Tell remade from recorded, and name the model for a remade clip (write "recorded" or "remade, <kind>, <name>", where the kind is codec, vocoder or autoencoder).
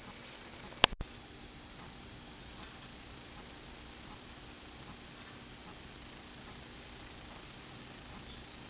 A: recorded